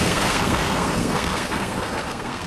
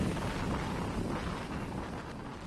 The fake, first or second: first